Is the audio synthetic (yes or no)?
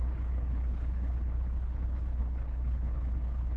yes